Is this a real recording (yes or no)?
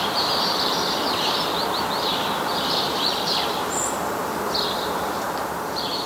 no